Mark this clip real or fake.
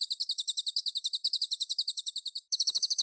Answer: fake